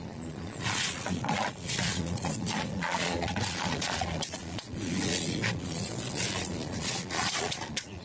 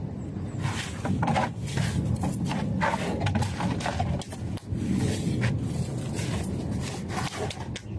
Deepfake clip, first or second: first